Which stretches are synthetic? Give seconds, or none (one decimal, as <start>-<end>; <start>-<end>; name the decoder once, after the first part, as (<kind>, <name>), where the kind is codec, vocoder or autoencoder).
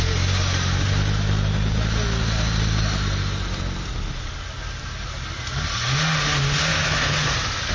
6.7-7.2 (autoencoder, DAC-VAE)